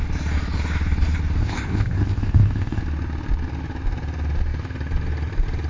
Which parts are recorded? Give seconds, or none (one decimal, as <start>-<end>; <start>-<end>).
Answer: 0.0-1.4; 2.8-5.7